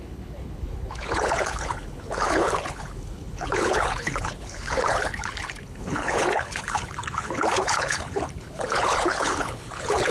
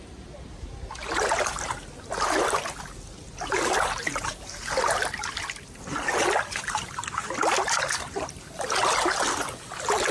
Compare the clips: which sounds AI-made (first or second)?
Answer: first